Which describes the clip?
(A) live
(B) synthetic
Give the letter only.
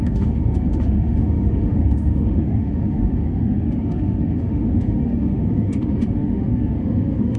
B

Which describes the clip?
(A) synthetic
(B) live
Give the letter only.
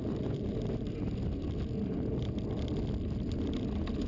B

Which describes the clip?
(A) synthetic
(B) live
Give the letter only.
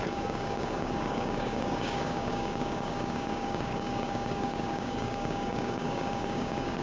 A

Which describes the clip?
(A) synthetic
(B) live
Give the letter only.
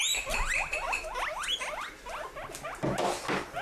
B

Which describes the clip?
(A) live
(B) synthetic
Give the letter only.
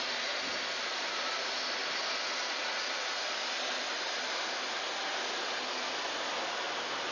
A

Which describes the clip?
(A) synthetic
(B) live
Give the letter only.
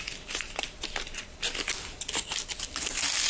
B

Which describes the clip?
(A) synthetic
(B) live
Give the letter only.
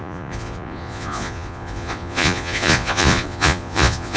A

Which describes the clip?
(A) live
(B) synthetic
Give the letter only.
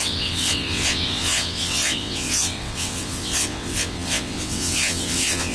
B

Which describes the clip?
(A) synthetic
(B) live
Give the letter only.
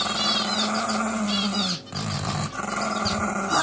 B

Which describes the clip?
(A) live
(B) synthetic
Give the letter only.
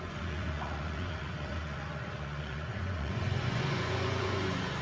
B